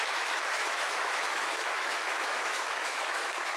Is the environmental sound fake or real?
fake